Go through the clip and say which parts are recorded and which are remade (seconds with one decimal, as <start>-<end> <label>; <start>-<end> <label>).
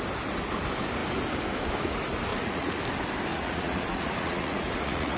0.0-2.3 recorded; 2.3-2.8 remade; 2.8-3.3 recorded; 3.3-5.2 remade